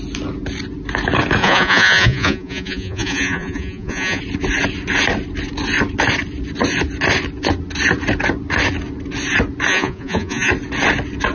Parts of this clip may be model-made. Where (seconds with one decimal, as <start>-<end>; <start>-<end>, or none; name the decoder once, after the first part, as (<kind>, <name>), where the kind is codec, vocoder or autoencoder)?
1.4-4.2 (vocoder, Vocos); 9.7-10.5